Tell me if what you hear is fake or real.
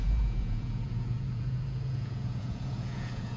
fake